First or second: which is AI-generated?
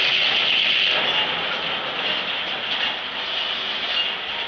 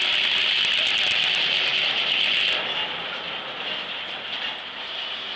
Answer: second